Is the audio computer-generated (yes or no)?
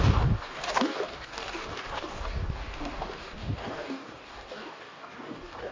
yes